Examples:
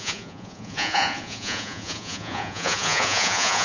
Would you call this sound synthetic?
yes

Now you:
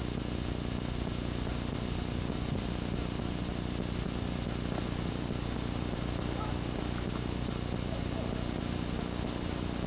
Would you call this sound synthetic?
no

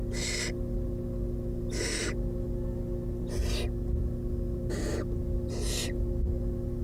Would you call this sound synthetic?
no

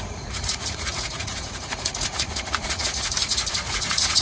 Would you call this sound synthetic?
yes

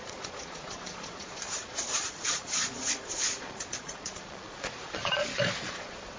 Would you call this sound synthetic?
yes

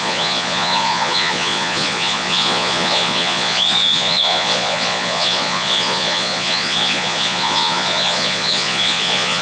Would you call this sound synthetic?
yes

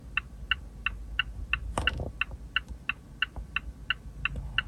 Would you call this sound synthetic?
no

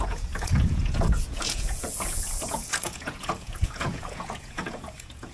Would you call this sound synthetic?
yes